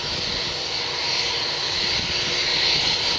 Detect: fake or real real